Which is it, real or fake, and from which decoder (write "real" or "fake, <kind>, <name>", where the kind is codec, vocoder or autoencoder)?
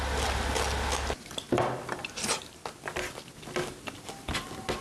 real